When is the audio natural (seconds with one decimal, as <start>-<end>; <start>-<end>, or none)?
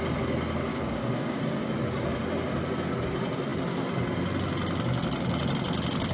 0.0-0.7; 1.7-6.1